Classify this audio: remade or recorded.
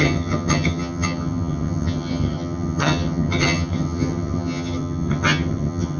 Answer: remade